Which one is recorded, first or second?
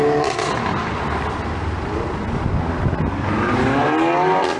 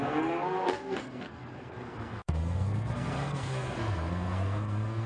first